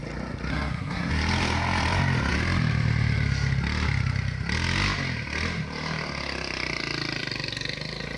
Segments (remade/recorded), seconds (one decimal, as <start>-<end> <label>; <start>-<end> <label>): 0.0-0.5 recorded; 0.5-1.1 remade; 1.1-8.2 recorded